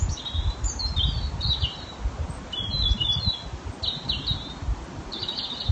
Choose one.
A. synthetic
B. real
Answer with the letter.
B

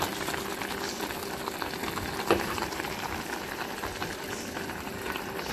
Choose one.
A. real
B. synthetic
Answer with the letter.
A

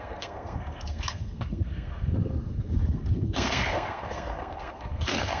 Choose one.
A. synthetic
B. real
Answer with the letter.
A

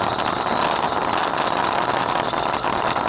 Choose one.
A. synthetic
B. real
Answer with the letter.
B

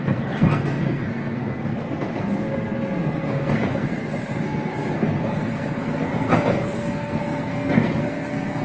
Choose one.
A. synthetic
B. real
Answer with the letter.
A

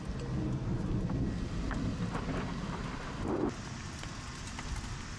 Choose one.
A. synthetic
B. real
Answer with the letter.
B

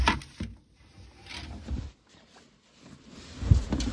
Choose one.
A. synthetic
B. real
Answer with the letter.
B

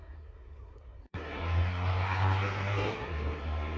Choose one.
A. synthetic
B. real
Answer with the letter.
A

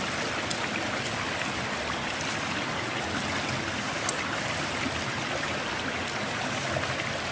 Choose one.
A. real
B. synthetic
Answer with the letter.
A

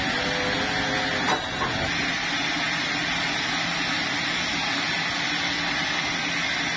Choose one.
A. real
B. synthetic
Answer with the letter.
A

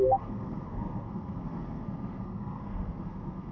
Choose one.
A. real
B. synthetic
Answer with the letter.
B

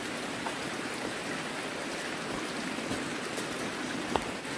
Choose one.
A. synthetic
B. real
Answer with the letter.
B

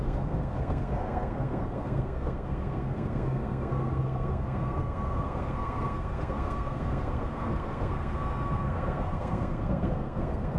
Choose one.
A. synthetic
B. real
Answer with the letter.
A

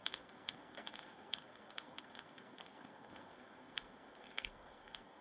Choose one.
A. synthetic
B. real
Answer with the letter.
A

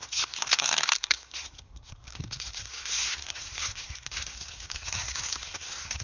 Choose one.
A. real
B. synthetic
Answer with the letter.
B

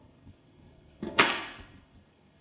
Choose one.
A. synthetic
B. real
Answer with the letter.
A